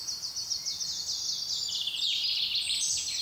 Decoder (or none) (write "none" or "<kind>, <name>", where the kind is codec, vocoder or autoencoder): none